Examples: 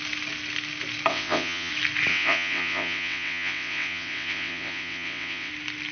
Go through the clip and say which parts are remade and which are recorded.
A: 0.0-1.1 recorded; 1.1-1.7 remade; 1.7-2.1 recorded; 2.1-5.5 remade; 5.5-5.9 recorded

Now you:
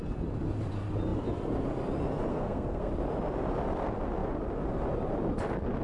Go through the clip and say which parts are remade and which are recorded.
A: 0.0-2.3 recorded; 2.3-2.9 remade; 2.9-5.8 recorded

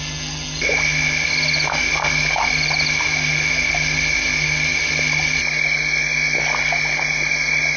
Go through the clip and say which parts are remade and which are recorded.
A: 0.0-7.8 recorded

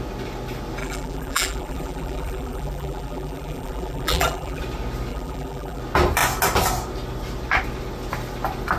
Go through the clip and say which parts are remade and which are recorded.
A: 0.0-0.8 recorded; 0.8-4.6 remade; 4.6-5.1 recorded; 5.1-5.8 remade; 5.8-8.8 recorded

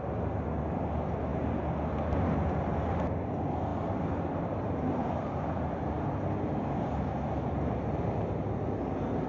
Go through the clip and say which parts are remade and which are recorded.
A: 0.0-9.3 recorded

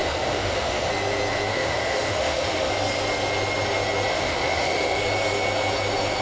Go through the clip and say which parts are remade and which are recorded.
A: 0.0-0.9 remade; 0.9-1.5 recorded; 1.5-2.7 remade; 2.7-4.1 recorded; 4.1-5.0 remade; 5.0-6.2 recorded

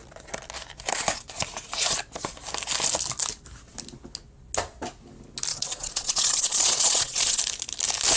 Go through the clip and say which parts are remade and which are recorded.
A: 0.0-5.5 recorded; 5.5-7.4 remade; 7.4-8.2 recorded

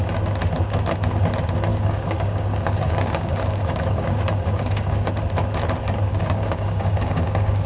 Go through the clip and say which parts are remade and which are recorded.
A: 0.0-1.7 recorded; 1.7-5.1 remade; 5.1-6.1 recorded; 6.1-7.7 remade